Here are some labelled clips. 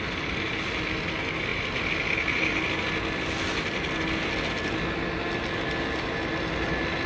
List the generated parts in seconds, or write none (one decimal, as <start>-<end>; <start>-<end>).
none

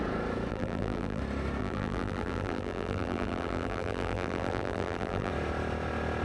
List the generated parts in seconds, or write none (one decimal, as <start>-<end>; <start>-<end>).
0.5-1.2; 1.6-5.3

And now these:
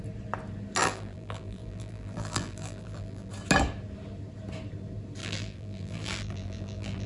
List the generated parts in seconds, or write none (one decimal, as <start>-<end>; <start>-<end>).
0.8-3.3; 5.2-7.1